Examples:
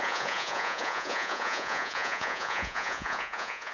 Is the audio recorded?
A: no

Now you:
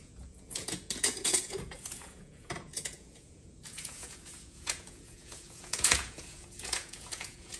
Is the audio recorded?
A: no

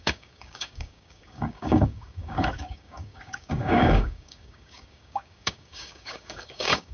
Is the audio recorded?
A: no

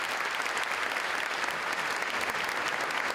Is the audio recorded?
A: yes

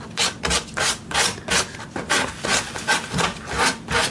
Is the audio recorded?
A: yes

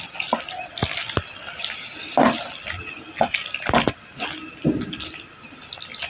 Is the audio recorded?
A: yes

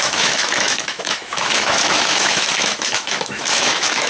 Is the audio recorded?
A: no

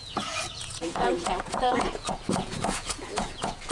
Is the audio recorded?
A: no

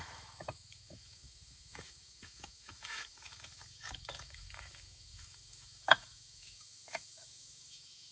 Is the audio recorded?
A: no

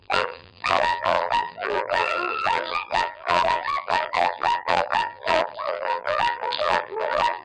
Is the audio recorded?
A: no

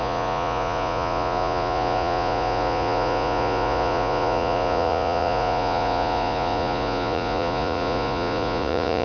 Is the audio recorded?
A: no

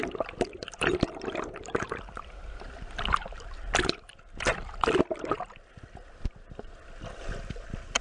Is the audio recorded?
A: yes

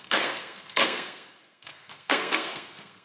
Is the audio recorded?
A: no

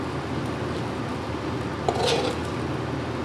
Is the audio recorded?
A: yes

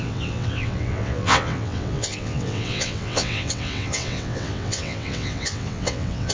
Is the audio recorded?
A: no